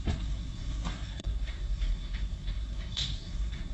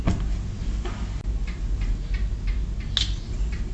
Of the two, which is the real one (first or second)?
second